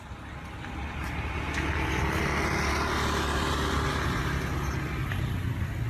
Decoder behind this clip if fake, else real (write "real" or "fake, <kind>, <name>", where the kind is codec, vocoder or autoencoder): real